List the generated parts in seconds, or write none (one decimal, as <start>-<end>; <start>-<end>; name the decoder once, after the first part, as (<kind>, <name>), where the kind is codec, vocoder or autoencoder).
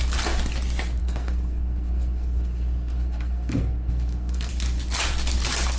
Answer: 1.0-4.5 (codec, SNAC)